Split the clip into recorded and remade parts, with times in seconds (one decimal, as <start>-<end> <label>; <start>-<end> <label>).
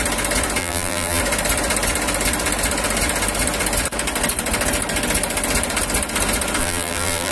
0.0-0.6 recorded; 0.6-1.2 remade; 1.2-6.6 recorded; 6.6-7.3 remade